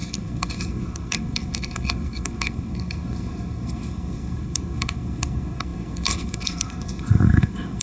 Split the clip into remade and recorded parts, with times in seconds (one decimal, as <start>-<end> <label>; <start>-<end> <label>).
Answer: 0.0-7.8 remade